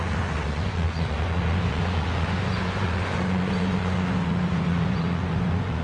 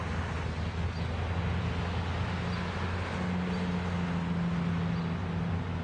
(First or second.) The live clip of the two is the second